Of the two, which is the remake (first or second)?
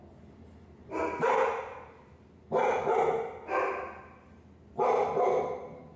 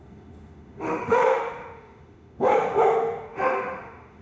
second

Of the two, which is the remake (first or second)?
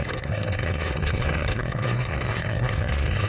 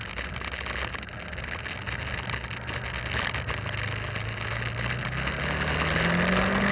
first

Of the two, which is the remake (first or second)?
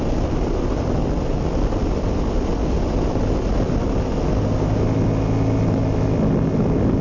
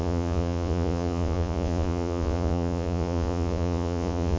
second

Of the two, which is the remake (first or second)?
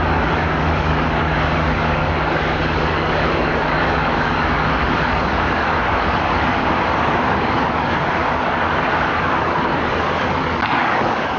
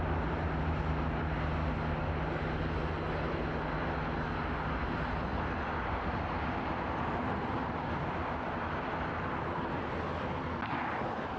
first